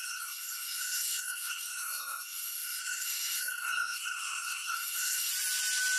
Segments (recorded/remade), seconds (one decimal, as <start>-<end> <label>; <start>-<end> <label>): 0.0-5.3 remade; 5.3-6.0 recorded